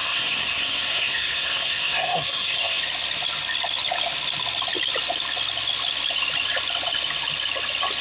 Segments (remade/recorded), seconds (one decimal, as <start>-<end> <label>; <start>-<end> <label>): 0.0-2.8 remade; 2.8-8.0 recorded